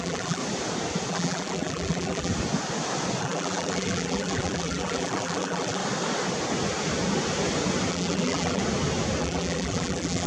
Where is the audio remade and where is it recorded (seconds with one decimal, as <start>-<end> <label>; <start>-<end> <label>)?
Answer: 0.0-0.4 remade; 0.4-1.1 recorded; 1.1-2.3 remade; 2.3-3.2 recorded; 3.2-5.8 remade; 5.8-7.9 recorded; 7.9-8.6 remade; 8.6-9.2 recorded; 9.2-10.3 remade